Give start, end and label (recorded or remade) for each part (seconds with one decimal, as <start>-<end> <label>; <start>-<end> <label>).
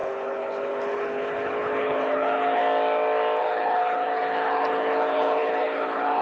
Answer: 0.0-2.6 remade; 2.6-3.4 recorded; 3.4-6.2 remade